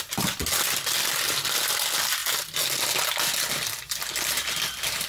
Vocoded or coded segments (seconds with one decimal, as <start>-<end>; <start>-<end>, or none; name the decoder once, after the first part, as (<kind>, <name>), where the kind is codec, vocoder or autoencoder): 0.0-2.2 (vocoder, BigVGAN v2); 3.8-5.1